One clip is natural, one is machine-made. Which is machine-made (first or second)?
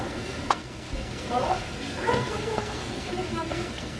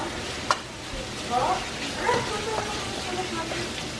first